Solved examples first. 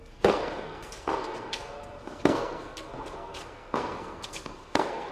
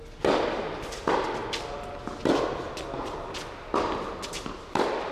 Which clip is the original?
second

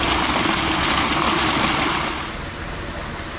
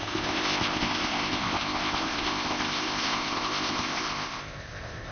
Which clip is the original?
first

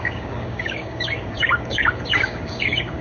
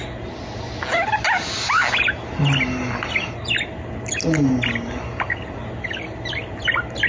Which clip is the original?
second